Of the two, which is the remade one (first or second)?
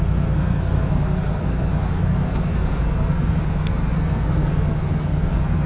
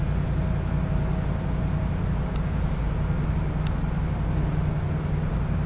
first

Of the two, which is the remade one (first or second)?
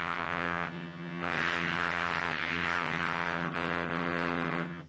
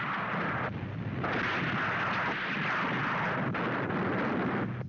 first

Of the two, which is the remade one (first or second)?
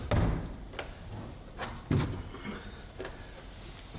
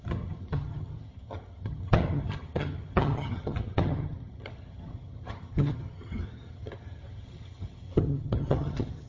second